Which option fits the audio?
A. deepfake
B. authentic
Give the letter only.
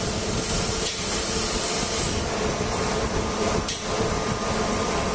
B